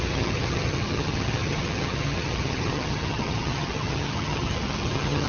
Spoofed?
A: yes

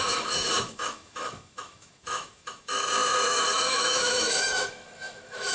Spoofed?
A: yes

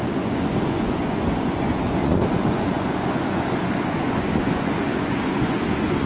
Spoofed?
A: yes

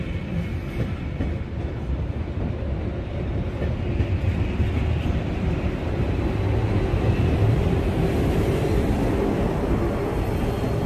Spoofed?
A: no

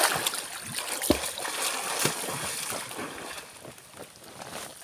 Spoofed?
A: no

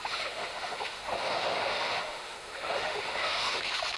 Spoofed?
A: yes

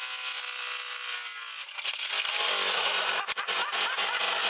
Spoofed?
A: no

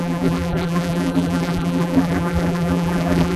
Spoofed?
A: yes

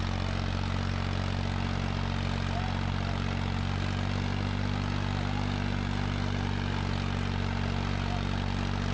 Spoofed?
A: no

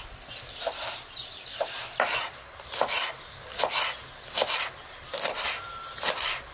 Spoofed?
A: no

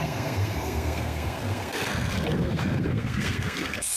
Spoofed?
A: yes